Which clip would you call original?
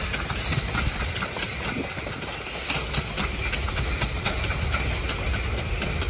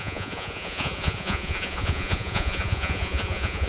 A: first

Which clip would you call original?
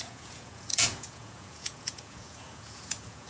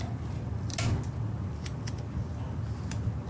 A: second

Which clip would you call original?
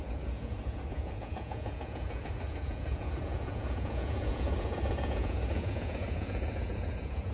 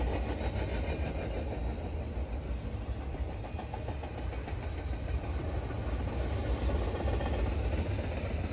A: second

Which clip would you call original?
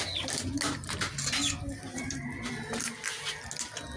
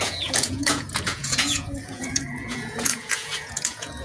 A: first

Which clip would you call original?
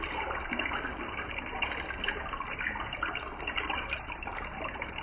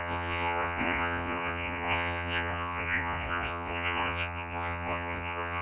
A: first